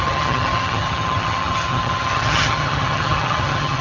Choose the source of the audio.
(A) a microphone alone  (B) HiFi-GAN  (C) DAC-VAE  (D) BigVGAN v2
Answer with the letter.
B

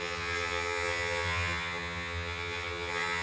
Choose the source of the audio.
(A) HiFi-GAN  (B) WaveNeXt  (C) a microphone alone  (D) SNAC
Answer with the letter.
A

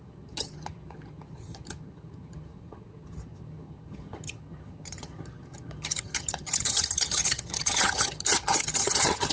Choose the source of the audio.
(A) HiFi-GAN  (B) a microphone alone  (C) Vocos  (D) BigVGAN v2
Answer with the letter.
A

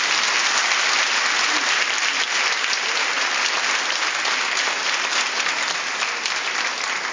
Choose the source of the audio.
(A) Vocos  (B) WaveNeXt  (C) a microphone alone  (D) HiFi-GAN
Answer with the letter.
C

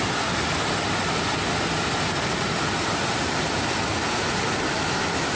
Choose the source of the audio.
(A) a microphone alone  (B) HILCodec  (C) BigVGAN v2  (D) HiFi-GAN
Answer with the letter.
A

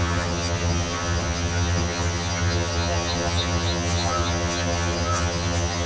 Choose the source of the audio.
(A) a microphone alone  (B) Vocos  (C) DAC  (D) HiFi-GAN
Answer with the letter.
D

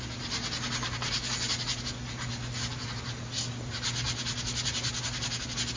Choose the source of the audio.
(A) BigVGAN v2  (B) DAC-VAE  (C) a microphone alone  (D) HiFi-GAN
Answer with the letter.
C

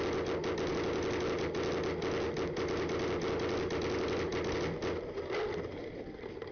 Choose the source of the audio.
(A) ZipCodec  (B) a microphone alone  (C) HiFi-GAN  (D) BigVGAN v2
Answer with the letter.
B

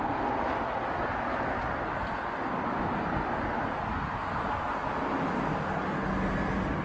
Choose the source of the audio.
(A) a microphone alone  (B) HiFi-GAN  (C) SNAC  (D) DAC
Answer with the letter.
A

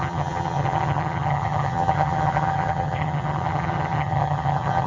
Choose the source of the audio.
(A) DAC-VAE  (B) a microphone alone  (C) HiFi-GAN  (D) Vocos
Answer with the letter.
C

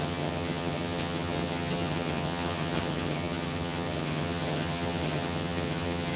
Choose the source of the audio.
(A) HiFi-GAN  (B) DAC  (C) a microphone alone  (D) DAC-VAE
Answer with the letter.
A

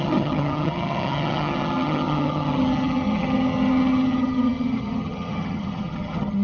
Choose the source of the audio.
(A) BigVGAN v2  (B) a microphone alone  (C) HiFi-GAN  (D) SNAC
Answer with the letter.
C